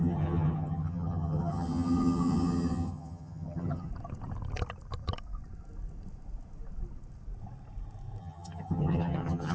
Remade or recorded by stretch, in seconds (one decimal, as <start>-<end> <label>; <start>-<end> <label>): 0.0-3.9 remade; 3.9-8.2 recorded; 8.2-9.5 remade